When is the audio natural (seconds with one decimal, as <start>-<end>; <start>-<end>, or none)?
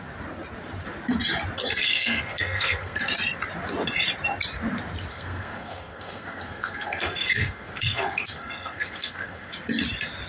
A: 0.0-1.8; 3.1-5.1; 9.5-10.3